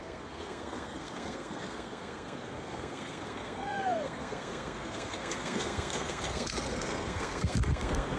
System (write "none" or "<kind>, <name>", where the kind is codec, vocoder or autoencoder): codec, SNAC